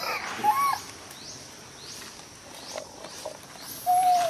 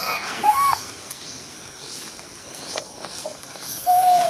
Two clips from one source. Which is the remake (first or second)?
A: second